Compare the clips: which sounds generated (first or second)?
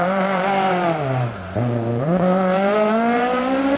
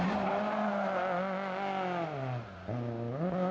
first